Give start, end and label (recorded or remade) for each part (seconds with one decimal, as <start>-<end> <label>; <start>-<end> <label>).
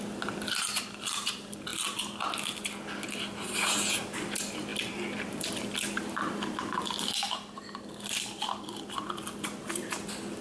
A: 0.0-10.4 recorded